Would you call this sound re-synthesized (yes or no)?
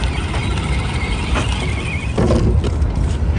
no